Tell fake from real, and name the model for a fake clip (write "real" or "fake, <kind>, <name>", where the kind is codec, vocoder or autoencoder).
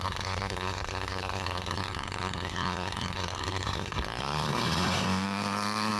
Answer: fake, codec, SNAC